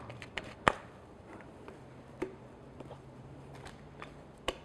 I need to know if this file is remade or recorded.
remade